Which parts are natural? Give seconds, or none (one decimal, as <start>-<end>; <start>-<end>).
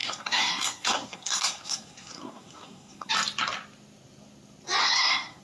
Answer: 3.1-4.8